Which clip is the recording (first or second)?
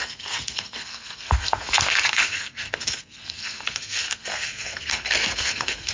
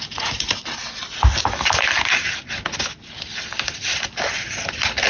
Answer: second